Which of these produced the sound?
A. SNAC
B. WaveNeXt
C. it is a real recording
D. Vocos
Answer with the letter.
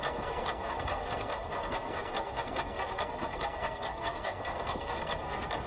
A